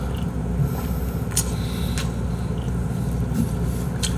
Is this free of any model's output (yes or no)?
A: yes